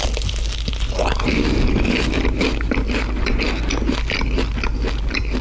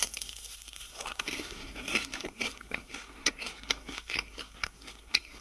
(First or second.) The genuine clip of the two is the first